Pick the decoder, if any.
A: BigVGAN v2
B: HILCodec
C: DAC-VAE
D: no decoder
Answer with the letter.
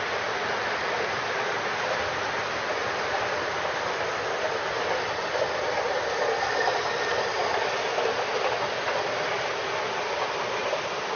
D